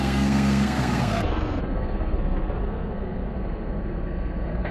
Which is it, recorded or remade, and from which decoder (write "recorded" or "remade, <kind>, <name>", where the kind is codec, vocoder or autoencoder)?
remade, codec, SNAC